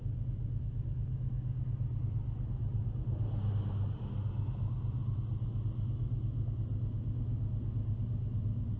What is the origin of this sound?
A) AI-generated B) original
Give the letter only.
B